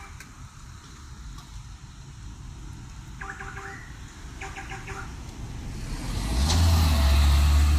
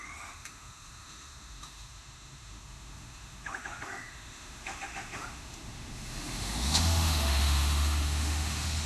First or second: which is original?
first